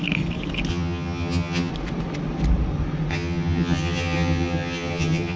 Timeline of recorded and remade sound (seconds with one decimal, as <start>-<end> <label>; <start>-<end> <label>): 0.0-0.7 recorded; 0.7-1.7 remade; 1.7-3.1 recorded; 3.1-5.4 remade